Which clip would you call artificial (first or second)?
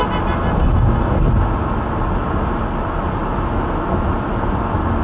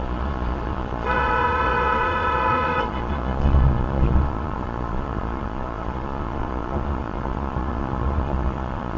second